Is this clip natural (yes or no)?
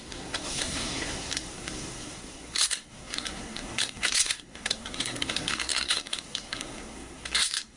no